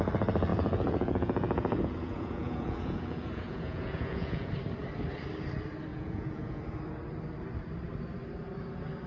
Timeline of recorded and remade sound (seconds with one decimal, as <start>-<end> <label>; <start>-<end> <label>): 0.0-0.5 recorded; 0.5-4.5 remade; 4.5-5.9 recorded; 5.9-6.6 remade; 6.6-9.1 recorded